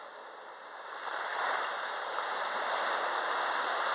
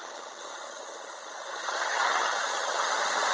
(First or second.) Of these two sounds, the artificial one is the second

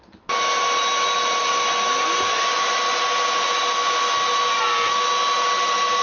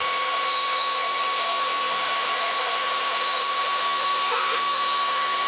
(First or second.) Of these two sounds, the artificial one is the second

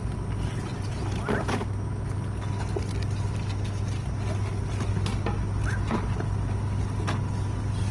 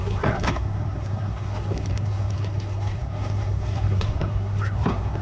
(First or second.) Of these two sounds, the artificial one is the second